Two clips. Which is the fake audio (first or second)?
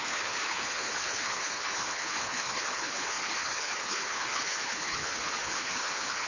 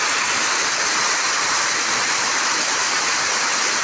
first